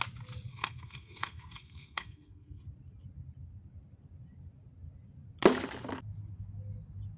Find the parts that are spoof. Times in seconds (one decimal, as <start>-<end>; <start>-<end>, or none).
0.5-2.6